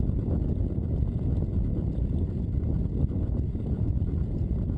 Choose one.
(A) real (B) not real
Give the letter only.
B